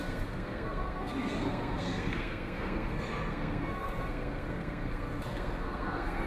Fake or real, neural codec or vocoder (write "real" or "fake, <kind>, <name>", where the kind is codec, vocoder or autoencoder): fake, codec, SNAC